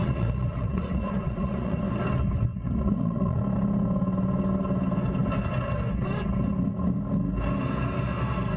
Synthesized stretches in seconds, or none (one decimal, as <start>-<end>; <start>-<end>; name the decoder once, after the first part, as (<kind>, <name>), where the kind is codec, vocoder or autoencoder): 0.0-1.8 (vocoder, Vocos); 2.5-3.4